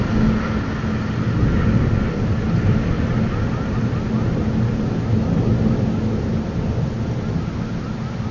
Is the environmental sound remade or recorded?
recorded